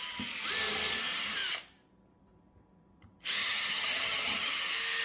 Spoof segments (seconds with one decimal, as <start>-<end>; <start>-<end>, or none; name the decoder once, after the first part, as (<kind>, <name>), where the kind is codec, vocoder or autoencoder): 3.4-4.5 (vocoder, HiFi-GAN)